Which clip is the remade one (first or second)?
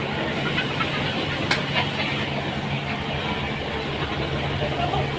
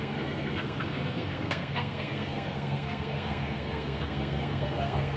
second